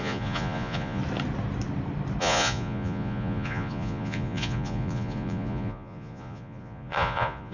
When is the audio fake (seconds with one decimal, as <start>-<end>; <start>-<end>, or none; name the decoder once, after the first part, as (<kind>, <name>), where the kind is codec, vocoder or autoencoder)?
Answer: 0.0-1.0 (vocoder, Vocos); 2.2-7.5

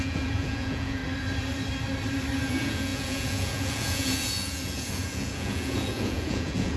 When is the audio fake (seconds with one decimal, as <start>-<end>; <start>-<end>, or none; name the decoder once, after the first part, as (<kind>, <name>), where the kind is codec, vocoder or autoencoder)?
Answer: 0.0-1.0 (vocoder, Vocos); 2.5-6.8

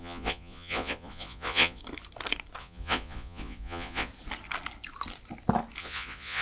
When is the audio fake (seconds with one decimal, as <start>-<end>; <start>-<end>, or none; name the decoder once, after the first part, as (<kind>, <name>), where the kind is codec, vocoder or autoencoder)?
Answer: 0.0-1.8 (vocoder, Vocos); 2.6-4.1; 5.8-6.4

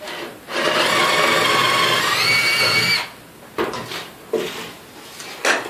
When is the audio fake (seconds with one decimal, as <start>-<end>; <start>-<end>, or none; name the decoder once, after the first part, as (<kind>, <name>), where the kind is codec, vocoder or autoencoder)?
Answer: none

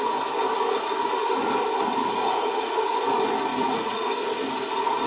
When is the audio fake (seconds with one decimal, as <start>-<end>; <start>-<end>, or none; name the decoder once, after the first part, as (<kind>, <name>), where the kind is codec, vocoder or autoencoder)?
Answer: 2.0-2.8 (vocoder, Vocos); 3.5-4.1

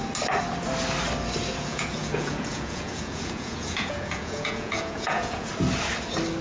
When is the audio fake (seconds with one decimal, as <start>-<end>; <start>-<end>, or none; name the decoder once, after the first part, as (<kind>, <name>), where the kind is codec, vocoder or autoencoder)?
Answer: 1.7-5.5 (vocoder, Vocos)

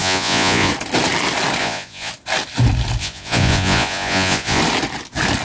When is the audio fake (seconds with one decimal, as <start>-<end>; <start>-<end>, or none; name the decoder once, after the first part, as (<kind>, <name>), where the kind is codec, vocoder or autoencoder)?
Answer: 0.0-0.7 (vocoder, Vocos); 1.6-2.1; 3.0-4.6